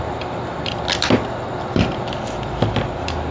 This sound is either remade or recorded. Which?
recorded